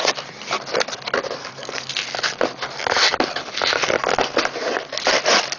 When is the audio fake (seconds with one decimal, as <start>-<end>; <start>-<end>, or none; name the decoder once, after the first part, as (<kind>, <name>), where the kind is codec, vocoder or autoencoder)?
1.4-1.9 (codec, SNAC)